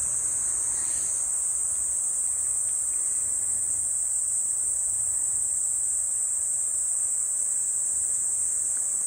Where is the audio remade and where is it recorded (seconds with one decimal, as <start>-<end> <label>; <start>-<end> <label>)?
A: 0.0-0.5 remade; 0.5-9.1 recorded